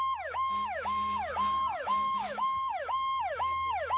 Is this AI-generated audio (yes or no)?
yes